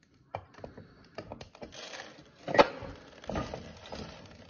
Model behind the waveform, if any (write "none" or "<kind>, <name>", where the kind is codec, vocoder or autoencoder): none